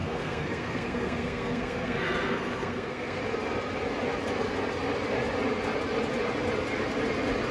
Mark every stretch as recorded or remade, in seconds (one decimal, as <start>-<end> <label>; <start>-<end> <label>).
0.0-3.2 remade; 3.2-7.5 recorded